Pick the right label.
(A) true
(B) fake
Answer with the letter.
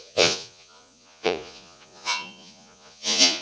B